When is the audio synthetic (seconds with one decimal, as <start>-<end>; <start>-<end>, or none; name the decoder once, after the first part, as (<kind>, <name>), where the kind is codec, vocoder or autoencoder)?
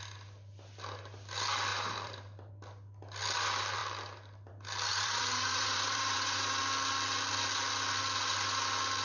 1.7-2.5 (vocoder, BigVGAN v2); 4.9-6.6